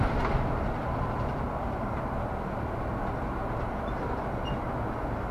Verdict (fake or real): real